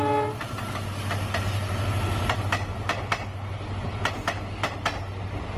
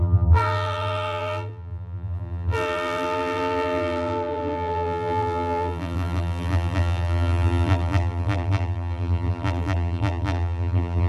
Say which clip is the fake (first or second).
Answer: second